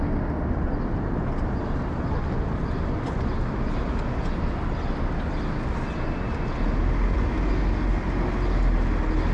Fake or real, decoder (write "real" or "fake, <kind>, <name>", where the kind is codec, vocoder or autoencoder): real